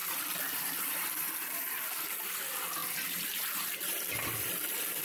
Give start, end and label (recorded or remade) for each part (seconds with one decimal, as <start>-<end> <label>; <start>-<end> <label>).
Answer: 0.0-1.3 remade; 1.3-2.8 recorded; 2.8-5.0 remade